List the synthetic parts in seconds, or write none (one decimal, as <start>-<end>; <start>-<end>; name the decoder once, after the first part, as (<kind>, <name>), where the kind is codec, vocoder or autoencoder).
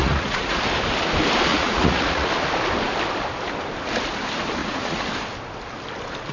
0.0-0.6 (vocoder, Vocos); 1.5-2.3; 4.6-5.1